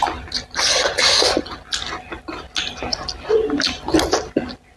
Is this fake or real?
real